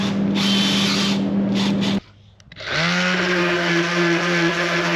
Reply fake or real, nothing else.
real